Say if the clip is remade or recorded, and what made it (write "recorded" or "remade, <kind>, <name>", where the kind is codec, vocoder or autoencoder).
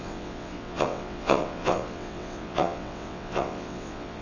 remade, vocoder, WaveNeXt